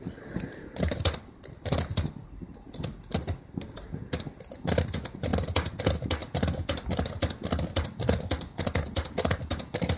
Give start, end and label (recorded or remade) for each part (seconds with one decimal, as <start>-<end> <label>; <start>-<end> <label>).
0.0-10.0 recorded